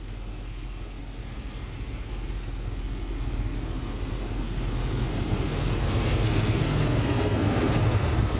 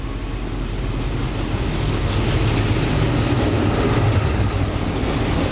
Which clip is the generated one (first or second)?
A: first